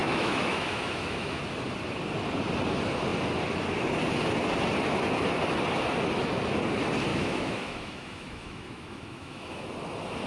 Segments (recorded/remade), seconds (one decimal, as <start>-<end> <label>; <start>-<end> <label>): 0.0-1.4 remade; 1.4-7.1 recorded; 7.1-9.7 remade; 9.7-10.3 recorded